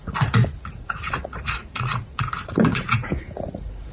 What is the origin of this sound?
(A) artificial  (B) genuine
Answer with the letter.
A